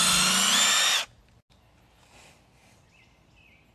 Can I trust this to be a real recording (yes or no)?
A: yes